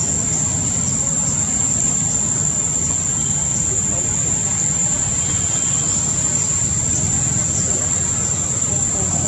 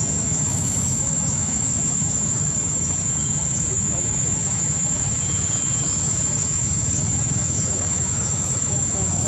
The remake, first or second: second